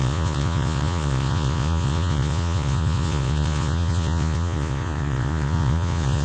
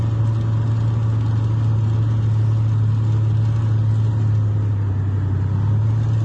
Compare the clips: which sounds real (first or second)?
second